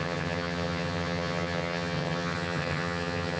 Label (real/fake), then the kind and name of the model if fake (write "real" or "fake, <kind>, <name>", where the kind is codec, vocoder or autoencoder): fake, vocoder, HiFi-GAN